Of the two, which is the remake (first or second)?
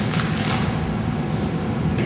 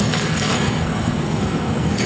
second